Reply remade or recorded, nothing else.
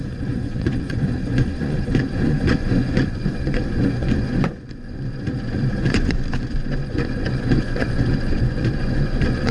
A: remade